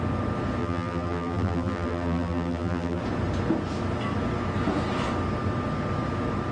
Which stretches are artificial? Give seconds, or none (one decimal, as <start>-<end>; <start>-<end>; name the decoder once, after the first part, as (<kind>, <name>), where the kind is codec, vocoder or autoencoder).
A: 0.6-3.0 (vocoder, BigVGAN v2)